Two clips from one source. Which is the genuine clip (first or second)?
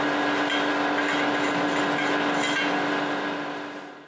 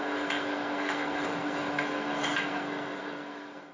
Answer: first